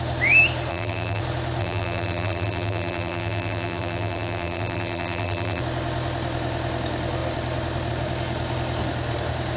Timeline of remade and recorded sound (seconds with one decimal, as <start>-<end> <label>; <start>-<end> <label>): 0.0-0.7 recorded; 0.7-1.2 remade; 1.2-1.6 recorded; 1.6-5.6 remade; 5.6-9.6 recorded